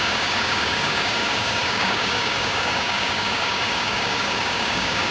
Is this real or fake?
fake